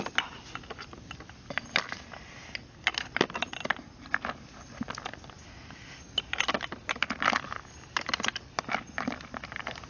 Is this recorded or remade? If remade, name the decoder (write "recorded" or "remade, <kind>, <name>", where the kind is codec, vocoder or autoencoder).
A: recorded